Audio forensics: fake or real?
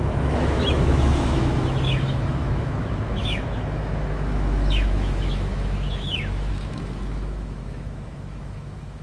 fake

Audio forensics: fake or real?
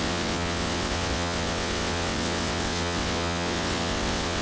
fake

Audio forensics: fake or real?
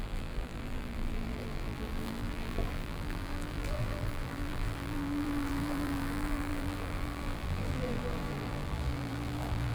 fake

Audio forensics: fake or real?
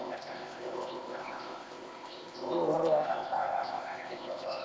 fake